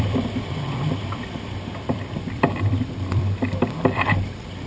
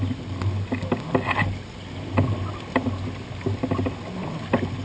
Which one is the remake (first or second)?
first